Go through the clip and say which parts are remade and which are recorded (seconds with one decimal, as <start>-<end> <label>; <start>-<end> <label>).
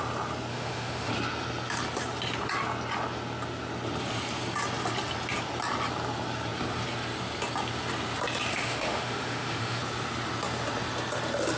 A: 0.0-0.5 recorded; 0.5-1.1 remade; 1.1-8.5 recorded; 8.5-9.8 remade; 9.8-11.6 recorded